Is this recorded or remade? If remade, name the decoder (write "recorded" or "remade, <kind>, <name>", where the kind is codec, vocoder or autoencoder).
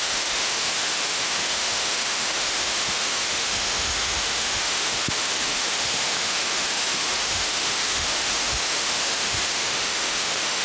remade, autoencoder, DAC-VAE